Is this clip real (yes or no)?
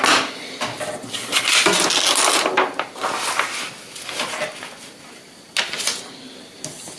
yes